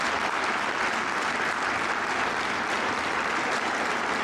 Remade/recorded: recorded